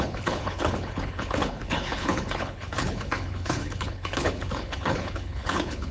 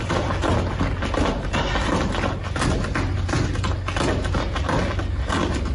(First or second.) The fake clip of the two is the first